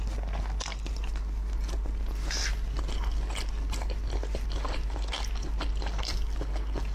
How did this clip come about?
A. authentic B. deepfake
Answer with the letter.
A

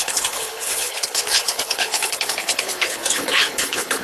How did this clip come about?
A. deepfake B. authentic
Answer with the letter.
A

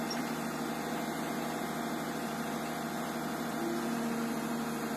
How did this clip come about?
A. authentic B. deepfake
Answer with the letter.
A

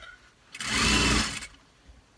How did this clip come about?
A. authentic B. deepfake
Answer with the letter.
A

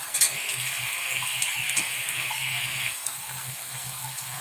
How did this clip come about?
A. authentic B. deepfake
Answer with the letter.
B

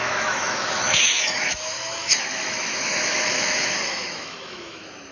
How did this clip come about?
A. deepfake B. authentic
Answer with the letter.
A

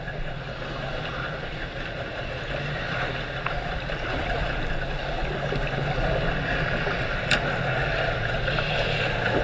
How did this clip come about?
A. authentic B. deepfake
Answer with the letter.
A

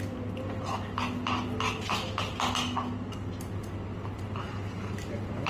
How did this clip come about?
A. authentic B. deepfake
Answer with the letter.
A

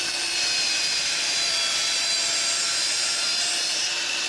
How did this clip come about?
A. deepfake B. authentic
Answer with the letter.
A